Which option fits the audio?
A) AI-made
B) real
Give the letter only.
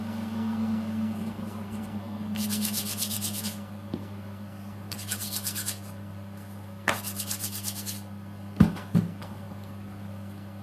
A